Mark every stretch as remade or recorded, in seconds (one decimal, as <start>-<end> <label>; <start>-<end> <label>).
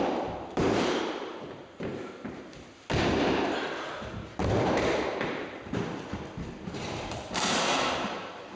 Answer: 0.0-1.9 remade; 1.9-4.4 recorded; 4.4-8.6 remade